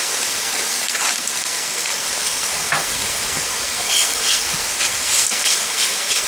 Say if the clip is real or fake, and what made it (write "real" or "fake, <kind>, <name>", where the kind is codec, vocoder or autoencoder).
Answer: fake, codec, SNAC